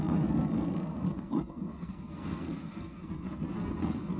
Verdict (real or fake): fake